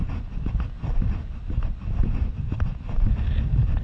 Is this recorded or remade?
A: recorded